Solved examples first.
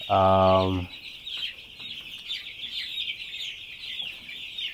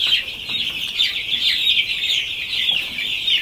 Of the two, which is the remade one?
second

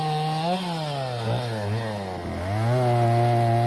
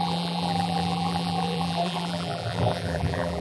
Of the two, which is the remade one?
second